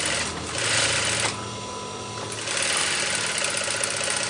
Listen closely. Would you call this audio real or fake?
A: real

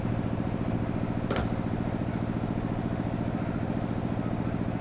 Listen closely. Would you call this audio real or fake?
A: real